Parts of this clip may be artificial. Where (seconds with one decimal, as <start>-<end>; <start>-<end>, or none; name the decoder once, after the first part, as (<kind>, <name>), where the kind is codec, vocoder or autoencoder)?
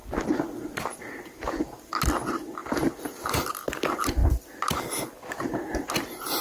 none